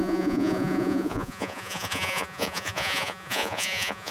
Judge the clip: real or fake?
fake